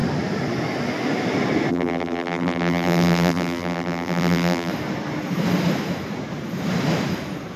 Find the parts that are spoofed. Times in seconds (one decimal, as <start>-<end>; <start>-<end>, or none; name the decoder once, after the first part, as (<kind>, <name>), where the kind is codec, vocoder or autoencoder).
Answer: 1.7-4.7 (vocoder, BigVGAN v2)